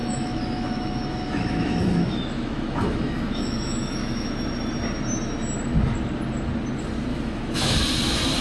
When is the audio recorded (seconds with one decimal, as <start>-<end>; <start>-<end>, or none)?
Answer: 4.3-7.1; 7.8-8.4